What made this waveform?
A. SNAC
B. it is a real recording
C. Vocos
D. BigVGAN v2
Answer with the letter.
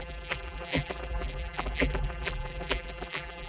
D